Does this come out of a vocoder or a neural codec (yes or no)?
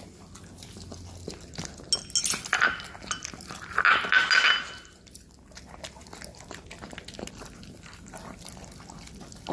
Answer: no